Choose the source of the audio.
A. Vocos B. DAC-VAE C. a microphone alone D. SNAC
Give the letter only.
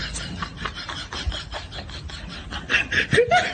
C